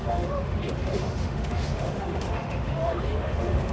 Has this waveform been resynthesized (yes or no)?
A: yes